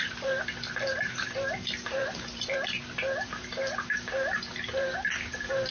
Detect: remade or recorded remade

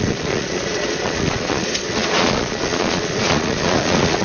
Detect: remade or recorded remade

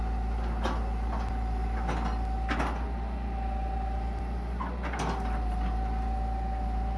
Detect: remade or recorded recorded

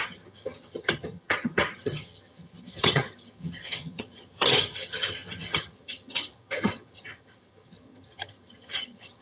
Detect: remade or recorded remade